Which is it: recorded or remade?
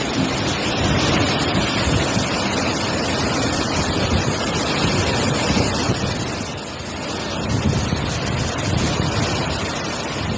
recorded